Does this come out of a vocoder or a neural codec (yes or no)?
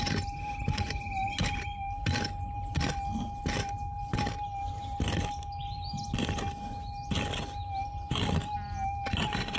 no